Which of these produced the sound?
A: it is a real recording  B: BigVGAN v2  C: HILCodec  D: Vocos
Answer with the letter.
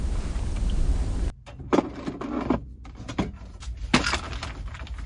A